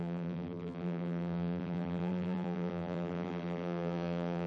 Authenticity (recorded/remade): remade